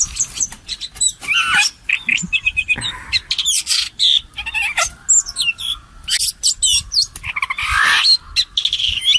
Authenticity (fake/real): real